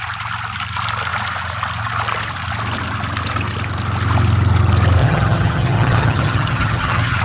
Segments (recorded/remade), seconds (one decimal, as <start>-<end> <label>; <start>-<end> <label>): 0.0-5.0 recorded; 5.0-7.2 remade